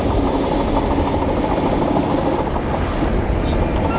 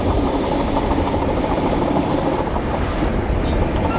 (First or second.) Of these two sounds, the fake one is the second